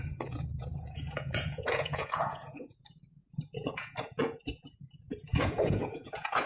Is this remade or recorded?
remade